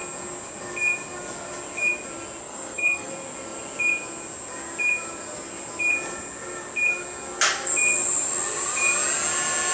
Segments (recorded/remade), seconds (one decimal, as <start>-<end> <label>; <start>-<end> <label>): 0.0-2.4 recorded; 2.4-3.1 remade; 3.1-9.7 recorded